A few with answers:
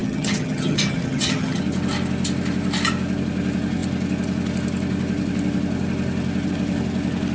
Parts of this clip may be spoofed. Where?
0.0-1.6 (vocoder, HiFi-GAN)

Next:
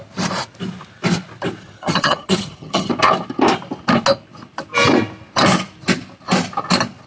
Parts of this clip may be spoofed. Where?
1.6-2.9 (vocoder, HiFi-GAN)